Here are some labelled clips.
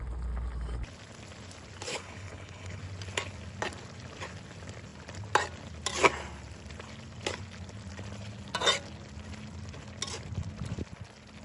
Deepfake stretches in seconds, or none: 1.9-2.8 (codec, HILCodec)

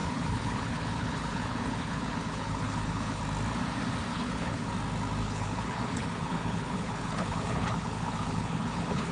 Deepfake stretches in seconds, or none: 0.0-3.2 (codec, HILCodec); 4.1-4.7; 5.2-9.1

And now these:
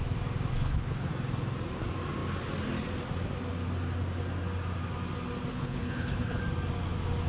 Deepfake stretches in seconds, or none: 0.5-1.1 (codec, HILCodec); 5.5-6.4

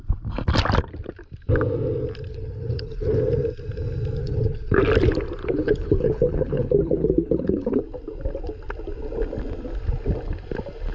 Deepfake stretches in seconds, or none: 2.3-3.2 (codec, HILCodec); 4.2-4.8; 5.4-7.8

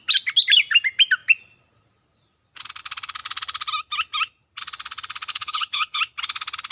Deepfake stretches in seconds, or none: 5.3-6.0 (codec, HILCodec)